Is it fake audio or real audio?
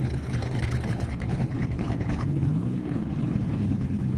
fake